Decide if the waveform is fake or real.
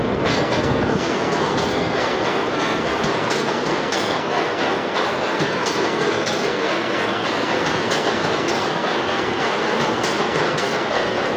fake